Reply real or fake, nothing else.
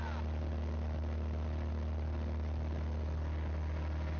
real